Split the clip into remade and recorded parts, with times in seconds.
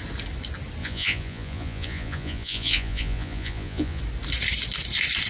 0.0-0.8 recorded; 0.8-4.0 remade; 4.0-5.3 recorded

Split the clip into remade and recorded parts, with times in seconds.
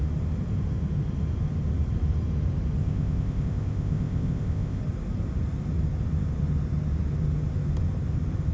0.0-2.8 recorded; 2.8-4.8 remade; 4.8-8.5 recorded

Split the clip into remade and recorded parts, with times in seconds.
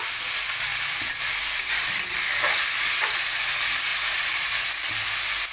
0.0-0.7 recorded; 0.7-2.2 remade; 2.2-5.5 recorded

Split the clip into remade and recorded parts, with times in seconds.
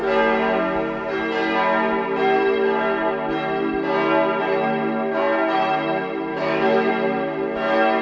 0.0-6.3 recorded; 6.3-6.9 remade; 6.9-8.0 recorded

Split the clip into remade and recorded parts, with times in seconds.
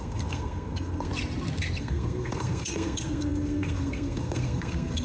0.0-1.1 remade; 1.1-1.8 recorded; 1.8-5.0 remade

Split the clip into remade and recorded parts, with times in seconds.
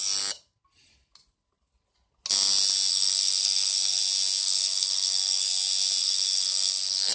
0.0-2.9 recorded; 2.9-4.0 remade; 4.0-4.4 recorded; 4.4-5.5 remade; 5.5-6.0 recorded; 6.0-7.1 remade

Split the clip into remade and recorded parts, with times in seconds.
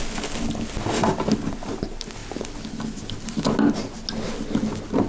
0.0-5.1 recorded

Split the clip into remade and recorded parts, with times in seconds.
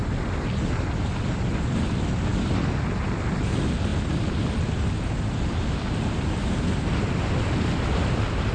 0.0-8.5 recorded